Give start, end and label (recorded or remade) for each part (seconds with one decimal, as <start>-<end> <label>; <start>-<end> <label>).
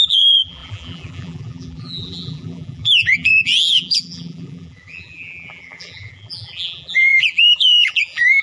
0.0-8.4 remade